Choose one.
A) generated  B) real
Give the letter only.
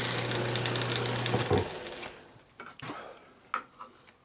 B